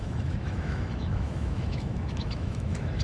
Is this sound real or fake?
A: fake